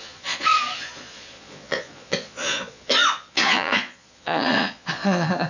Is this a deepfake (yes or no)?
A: yes